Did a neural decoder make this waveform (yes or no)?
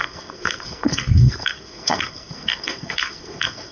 yes